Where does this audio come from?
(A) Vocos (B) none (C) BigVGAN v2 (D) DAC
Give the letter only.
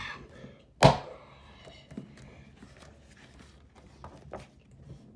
B